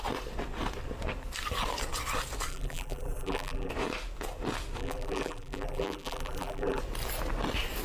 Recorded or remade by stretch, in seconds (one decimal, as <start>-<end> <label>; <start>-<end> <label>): 0.0-2.5 recorded; 2.5-3.7 remade; 3.7-4.8 recorded; 4.8-6.8 remade; 6.8-7.8 recorded